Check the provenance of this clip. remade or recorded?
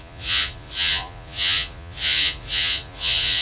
remade